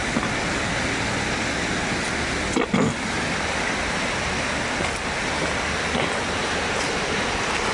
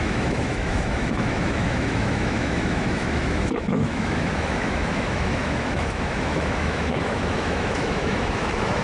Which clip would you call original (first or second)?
first